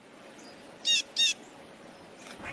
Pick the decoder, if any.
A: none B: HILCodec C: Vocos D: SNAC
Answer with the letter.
A